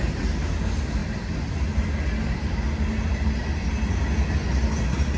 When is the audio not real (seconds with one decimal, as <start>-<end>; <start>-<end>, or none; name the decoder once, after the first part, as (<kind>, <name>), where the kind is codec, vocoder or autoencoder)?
none